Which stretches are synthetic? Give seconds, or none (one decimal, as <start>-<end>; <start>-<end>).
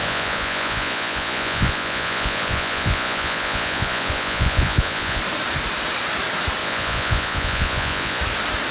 0.0-5.2; 6.6-8.2